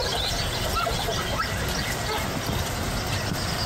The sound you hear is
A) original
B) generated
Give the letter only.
A